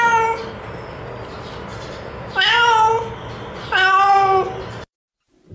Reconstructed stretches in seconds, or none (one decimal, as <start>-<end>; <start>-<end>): 0.4-1.0; 1.7-5.0